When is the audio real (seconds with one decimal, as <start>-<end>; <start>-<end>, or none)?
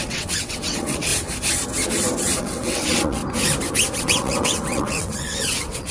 1.1-2.4; 3.2-4.0